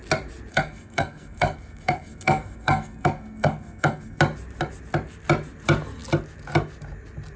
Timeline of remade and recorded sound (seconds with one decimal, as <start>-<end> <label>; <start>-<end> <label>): 0.0-0.5 recorded; 0.5-4.2 remade; 4.2-7.4 recorded